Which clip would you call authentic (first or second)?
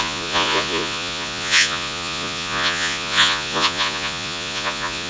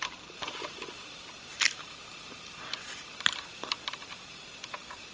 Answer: second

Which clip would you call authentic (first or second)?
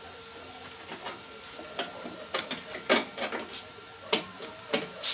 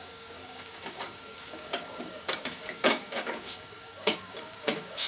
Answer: first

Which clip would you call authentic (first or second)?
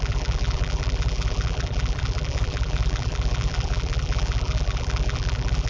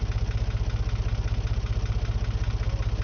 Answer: second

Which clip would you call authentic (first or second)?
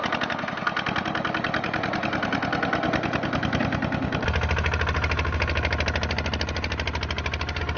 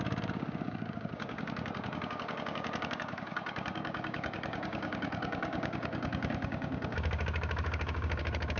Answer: first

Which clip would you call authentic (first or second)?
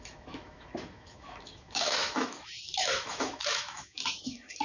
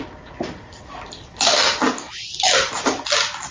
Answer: second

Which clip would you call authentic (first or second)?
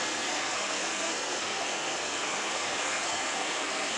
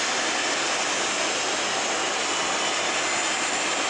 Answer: second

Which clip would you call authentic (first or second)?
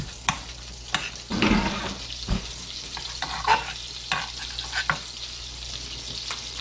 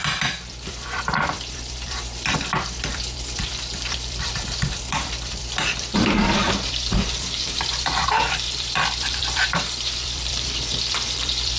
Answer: first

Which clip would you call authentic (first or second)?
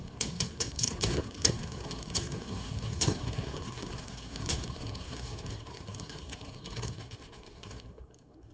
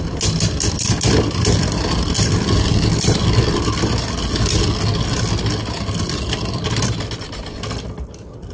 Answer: second